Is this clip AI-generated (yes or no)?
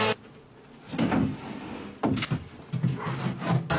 no